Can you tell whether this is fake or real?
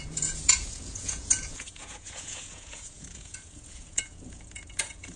fake